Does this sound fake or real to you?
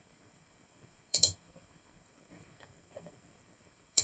fake